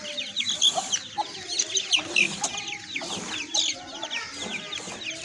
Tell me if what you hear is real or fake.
real